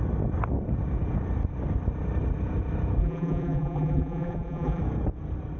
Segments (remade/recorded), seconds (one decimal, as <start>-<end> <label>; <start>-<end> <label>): 0.0-3.0 recorded; 3.0-4.8 remade; 4.8-5.6 recorded